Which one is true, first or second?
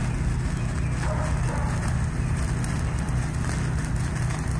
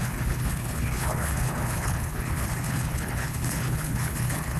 first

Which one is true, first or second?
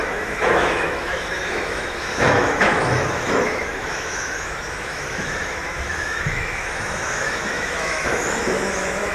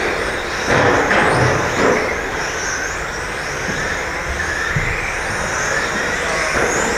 second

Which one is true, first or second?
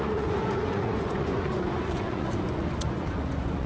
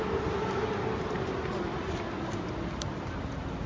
second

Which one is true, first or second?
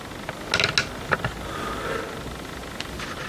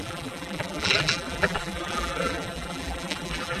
first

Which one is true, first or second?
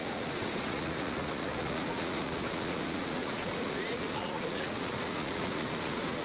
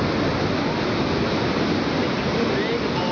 second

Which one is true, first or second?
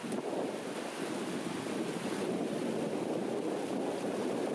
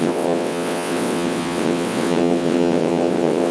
first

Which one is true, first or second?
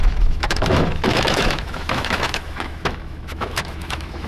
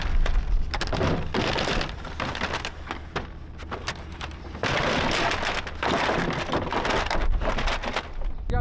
second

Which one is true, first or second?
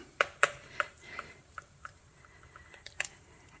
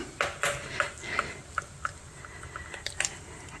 second